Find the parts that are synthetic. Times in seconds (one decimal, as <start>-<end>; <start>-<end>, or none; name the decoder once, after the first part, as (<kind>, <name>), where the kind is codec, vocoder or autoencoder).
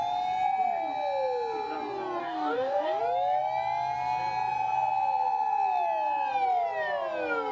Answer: 2.2-3.0 (codec, DAC)